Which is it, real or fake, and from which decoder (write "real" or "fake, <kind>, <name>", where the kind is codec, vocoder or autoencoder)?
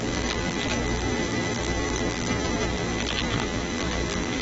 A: fake, vocoder, BigVGAN v2